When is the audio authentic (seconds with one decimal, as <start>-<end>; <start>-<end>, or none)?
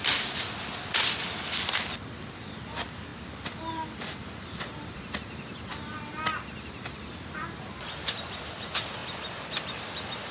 0.0-10.3